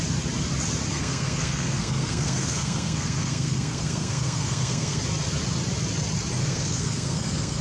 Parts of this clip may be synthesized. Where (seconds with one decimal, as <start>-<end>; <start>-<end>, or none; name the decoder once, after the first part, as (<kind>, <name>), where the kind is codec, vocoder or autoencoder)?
0.9-5.0 (codec, SNAC); 6.4-7.6